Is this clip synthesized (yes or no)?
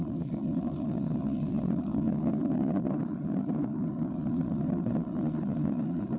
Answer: yes